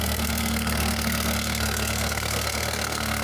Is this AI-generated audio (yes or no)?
yes